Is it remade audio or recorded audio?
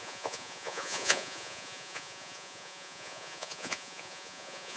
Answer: remade